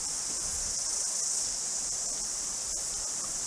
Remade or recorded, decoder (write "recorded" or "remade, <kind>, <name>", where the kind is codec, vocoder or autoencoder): remade, vocoder, BigVGAN v2